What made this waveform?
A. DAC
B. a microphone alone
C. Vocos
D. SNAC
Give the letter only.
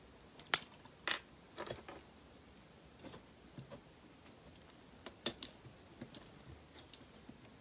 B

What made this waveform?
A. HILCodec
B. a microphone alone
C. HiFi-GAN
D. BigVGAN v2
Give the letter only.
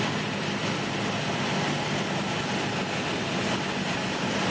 B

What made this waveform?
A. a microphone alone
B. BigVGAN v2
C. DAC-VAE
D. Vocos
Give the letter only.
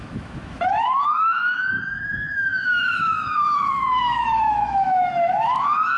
C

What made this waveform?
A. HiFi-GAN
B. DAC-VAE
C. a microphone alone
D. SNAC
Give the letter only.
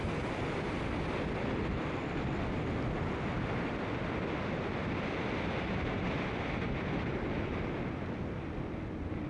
C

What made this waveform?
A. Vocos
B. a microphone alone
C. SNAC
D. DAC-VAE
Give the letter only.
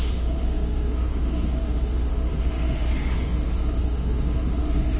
D